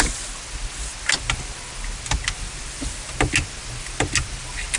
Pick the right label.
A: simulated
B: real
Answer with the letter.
B